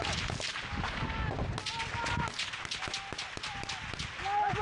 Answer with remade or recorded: recorded